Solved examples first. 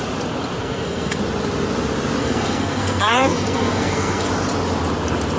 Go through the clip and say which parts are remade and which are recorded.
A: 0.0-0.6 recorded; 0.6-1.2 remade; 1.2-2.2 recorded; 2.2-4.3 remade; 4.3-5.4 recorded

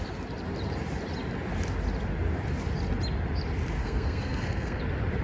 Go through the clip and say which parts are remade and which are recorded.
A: 0.0-3.8 recorded; 3.8-4.8 remade; 4.8-5.2 recorded

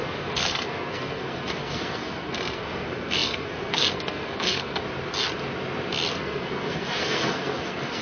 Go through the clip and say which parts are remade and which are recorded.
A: 0.0-4.8 remade; 4.8-6.1 recorded; 6.1-8.0 remade